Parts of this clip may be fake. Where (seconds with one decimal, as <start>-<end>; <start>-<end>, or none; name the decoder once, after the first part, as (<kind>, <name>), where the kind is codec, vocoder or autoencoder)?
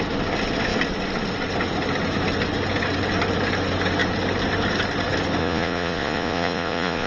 5.4-7.1 (vocoder, Vocos)